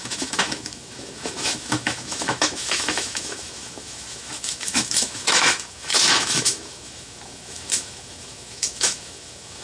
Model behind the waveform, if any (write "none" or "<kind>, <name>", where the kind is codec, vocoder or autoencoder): autoencoder, DAC-VAE